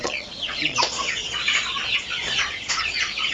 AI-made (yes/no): yes